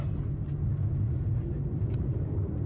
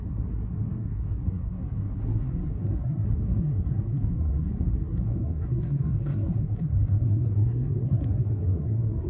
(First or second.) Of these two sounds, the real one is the first